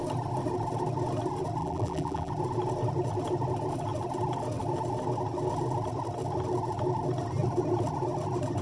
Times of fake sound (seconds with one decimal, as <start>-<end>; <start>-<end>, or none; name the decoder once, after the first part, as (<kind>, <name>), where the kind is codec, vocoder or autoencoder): 1.6-2.3 (vocoder, BigVGAN v2)